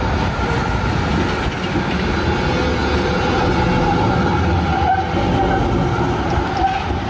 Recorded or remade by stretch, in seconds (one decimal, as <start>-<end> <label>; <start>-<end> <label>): 0.0-7.1 recorded